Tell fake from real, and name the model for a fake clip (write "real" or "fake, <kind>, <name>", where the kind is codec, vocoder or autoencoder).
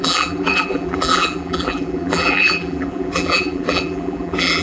fake, vocoder, BigVGAN v2